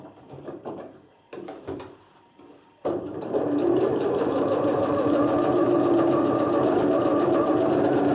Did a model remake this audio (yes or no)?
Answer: yes